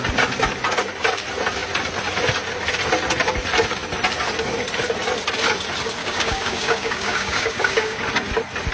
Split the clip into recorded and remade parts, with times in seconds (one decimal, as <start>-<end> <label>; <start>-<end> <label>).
0.0-6.0 recorded; 6.0-8.0 remade; 8.0-8.7 recorded